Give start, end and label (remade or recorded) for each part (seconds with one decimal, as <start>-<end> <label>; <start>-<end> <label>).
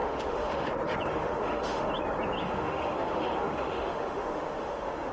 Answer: 0.0-0.7 remade; 0.7-1.1 recorded; 1.1-1.9 remade; 1.9-2.4 recorded; 2.4-5.1 remade